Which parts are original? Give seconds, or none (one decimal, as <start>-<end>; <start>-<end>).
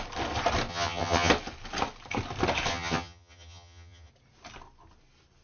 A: 0.0-0.7; 1.3-2.7; 4.1-5.4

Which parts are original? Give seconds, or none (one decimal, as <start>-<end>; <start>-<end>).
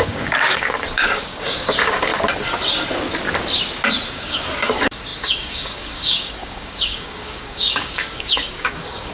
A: 2.1-4.1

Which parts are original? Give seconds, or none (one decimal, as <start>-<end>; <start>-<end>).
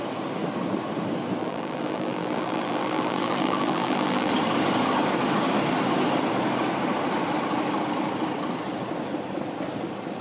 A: 0.0-1.4; 4.3-10.2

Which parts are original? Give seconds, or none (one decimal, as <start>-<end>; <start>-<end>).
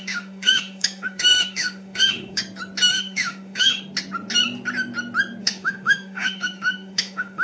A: 2.4-2.9; 3.8-5.4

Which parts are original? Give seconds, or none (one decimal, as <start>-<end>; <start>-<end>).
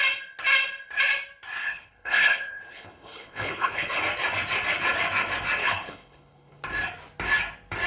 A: 0.0-1.6; 4.0-5.6; 6.6-7.9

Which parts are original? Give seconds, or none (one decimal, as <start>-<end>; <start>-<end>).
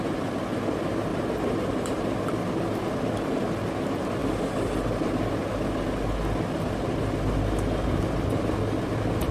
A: 0.0-1.1; 2.2-9.3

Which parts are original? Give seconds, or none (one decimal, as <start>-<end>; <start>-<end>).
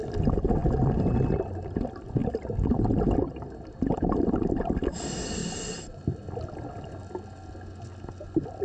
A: 0.0-5.4; 6.0-8.6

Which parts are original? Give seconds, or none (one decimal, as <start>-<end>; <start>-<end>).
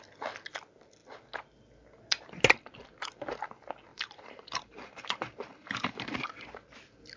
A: 0.0-3.9; 6.2-7.2